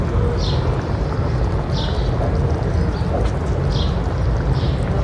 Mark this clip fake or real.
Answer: real